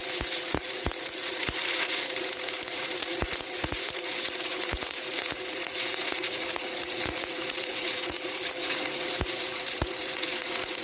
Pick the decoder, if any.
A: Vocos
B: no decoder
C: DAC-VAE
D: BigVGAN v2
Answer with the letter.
A